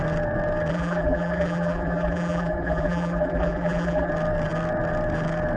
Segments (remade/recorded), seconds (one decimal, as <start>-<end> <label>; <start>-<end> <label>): 0.0-0.7 recorded; 0.7-4.1 remade; 4.1-5.6 recorded